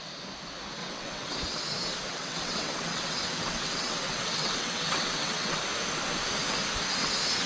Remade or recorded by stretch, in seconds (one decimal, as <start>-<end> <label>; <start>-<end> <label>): 0.0-0.8 recorded; 0.8-1.3 remade; 1.3-2.1 recorded; 2.1-5.6 remade; 5.6-7.5 recorded